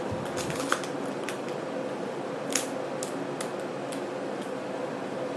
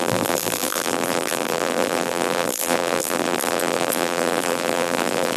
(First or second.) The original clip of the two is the first